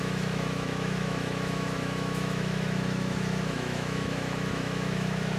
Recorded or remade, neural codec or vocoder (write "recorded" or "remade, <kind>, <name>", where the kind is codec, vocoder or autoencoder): remade, autoencoder, DAC-VAE